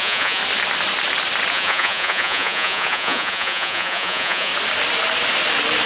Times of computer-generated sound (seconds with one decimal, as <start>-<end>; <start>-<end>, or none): 0.0-0.4; 1.5-4.5

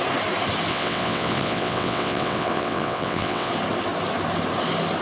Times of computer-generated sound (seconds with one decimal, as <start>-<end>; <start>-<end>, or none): 0.7-3.5